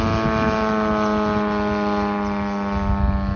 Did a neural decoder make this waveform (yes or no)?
no